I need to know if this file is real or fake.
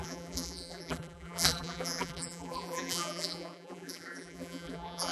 fake